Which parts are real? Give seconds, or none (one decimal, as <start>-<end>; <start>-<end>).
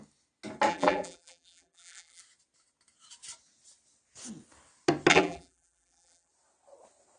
0.0-0.7; 2.2-5.1; 6.3-7.2